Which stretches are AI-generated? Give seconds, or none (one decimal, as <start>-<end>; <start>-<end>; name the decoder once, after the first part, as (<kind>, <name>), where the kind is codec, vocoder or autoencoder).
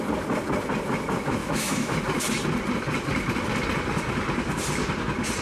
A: 1.4-2.0 (autoencoder, DAC-VAE)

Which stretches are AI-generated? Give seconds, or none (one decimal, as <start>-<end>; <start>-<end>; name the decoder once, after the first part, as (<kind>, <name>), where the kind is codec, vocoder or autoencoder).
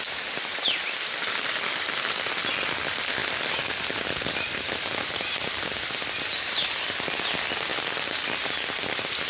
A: none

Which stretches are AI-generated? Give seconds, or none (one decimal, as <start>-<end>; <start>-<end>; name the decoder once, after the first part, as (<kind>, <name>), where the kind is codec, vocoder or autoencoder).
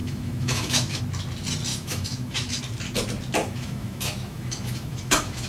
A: 0.0-1.0 (autoencoder, DAC-VAE); 1.7-2.6; 3.4-5.5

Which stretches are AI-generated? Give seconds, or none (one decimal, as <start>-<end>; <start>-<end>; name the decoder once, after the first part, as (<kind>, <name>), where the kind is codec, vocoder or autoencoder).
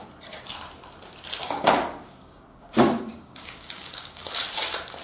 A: 1.4-4.4 (codec, DAC)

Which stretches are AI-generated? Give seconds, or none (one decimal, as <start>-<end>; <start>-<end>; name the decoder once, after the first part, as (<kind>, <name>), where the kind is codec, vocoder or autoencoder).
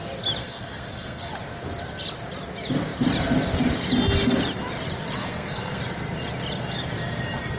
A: 0.4-1.3 (codec, SNAC); 5.2-5.8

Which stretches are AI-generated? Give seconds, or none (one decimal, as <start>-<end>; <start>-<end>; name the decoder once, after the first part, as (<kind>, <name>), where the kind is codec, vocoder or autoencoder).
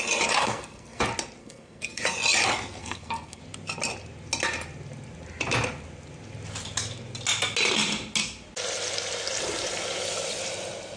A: 0.4-1.0 (codec, SNAC); 1.4-2.0; 2.8-3.4